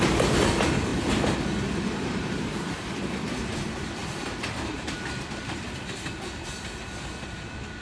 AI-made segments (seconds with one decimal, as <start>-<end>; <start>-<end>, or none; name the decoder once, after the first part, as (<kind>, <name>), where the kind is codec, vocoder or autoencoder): 4.0-6.0 (vocoder, BigVGAN v2)